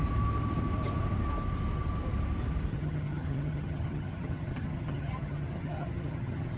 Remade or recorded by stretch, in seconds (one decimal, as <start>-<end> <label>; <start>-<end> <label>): 0.0-2.7 recorded; 2.7-6.6 remade